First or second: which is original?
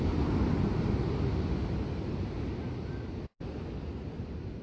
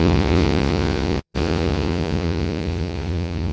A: first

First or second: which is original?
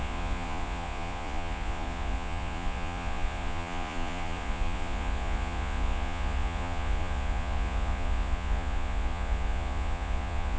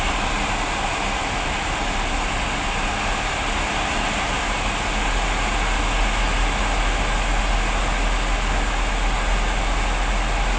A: second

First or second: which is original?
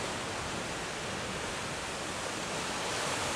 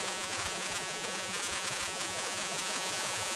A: first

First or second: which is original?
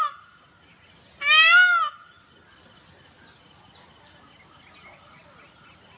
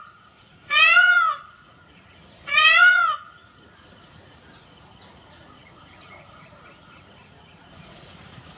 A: first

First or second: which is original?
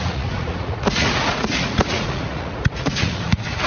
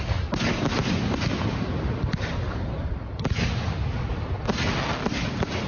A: second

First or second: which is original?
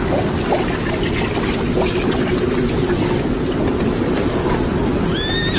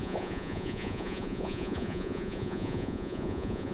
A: first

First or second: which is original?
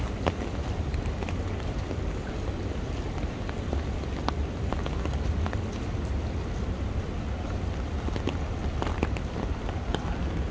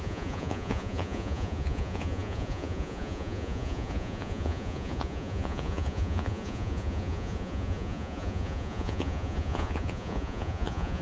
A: first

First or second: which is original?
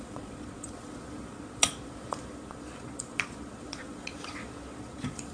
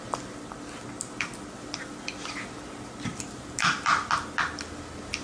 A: second